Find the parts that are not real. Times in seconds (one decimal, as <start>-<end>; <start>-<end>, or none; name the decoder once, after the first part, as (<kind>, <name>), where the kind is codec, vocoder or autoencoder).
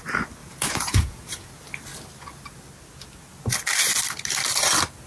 0.4-1.5 (vocoder, Vocos)